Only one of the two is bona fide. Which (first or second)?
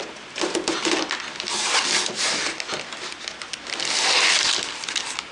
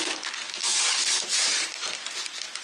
first